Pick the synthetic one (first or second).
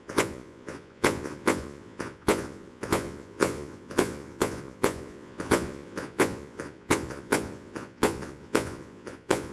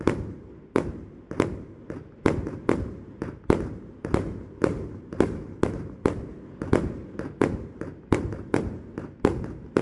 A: first